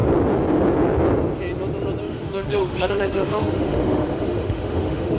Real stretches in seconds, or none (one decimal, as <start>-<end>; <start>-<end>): 0.0-2.0